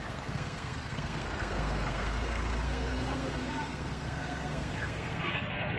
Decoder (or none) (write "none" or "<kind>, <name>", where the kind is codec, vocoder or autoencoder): codec, SNAC